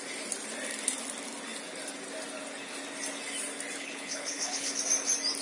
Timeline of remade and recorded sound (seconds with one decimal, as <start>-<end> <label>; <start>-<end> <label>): 0.0-3.8 recorded; 3.8-4.8 remade; 4.8-5.4 recorded